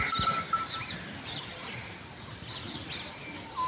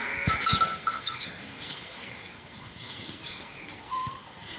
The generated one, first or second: second